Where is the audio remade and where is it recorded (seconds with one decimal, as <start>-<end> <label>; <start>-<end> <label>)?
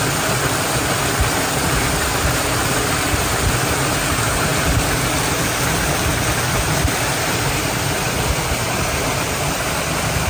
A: 0.0-10.3 recorded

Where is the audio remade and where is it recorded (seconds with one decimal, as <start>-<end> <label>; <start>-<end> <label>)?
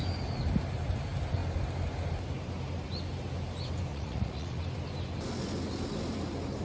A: 0.0-3.9 recorded; 3.9-4.6 remade; 4.6-6.6 recorded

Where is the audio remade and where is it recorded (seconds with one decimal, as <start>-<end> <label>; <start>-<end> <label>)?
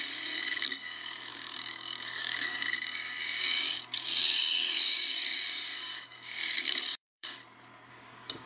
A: 0.0-7.4 remade; 7.4-7.9 recorded; 7.9-8.5 remade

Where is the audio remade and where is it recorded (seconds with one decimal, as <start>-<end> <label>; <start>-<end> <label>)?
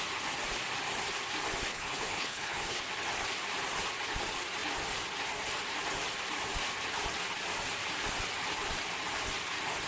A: 0.0-1.7 recorded; 1.7-2.8 remade; 2.8-9.9 recorded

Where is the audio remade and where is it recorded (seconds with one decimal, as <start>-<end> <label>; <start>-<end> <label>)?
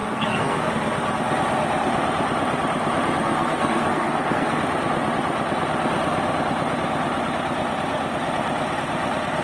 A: 0.0-0.7 remade; 0.7-3.2 recorded; 3.2-4.6 remade; 4.6-9.4 recorded